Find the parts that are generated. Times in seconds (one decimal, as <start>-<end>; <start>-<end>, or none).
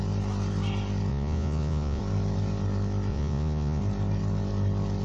1.1-2.0; 3.1-3.8